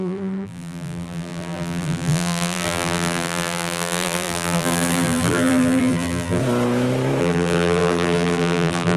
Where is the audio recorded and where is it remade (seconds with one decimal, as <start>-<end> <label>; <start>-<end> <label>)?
0.0-6.4 remade; 6.4-7.2 recorded; 7.2-9.0 remade